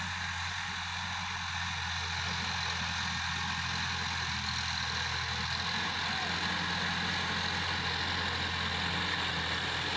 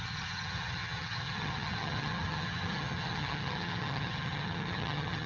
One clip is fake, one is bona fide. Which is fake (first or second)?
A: second